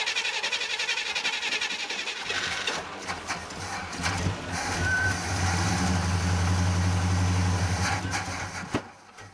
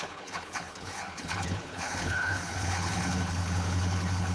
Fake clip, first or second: second